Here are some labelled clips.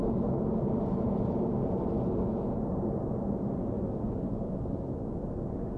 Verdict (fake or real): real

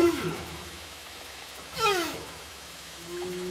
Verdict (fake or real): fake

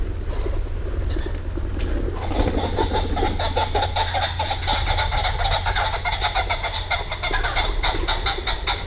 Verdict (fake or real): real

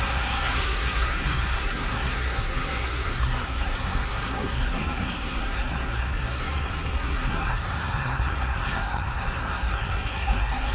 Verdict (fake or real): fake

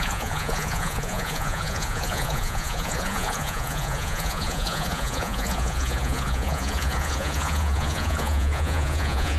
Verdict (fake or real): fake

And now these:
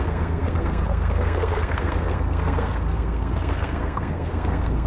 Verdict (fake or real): fake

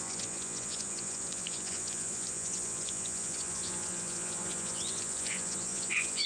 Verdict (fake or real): fake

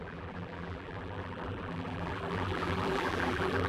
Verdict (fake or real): fake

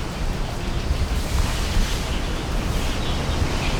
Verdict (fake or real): real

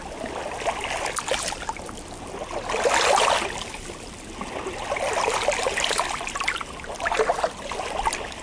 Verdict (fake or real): real